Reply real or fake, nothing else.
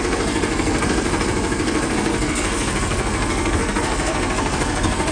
fake